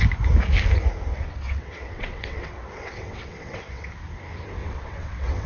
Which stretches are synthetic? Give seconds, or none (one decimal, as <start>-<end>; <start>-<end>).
1.1-3.9; 4.6-5.5